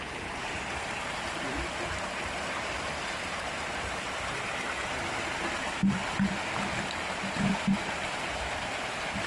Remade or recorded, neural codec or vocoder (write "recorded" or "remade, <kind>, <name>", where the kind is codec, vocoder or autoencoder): recorded